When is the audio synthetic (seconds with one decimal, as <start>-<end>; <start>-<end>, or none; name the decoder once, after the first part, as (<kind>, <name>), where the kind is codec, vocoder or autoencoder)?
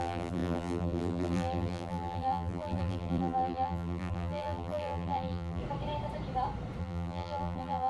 0.0-5.6 (vocoder, BigVGAN v2); 6.8-7.9